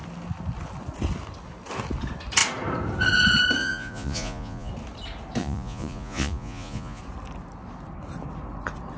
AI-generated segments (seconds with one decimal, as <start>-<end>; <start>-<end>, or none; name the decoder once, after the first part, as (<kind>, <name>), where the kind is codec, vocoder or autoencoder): 3.6-4.7 (vocoder, Vocos); 5.4-7.0